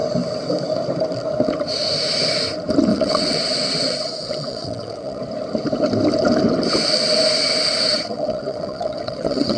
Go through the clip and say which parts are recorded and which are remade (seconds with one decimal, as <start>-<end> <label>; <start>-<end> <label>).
0.0-2.9 recorded; 2.9-5.2 remade; 5.2-7.9 recorded; 7.9-9.6 remade